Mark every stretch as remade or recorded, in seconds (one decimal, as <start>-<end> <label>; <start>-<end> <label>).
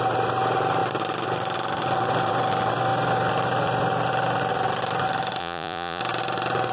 0.0-5.4 recorded; 5.4-6.0 remade; 6.0-6.7 recorded